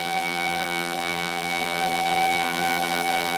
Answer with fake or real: fake